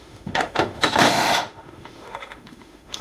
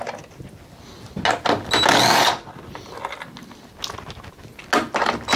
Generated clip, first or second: first